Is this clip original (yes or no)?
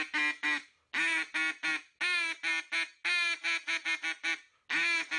yes